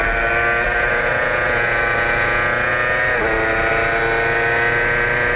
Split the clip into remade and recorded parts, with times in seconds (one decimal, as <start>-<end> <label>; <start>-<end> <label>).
0.0-5.4 recorded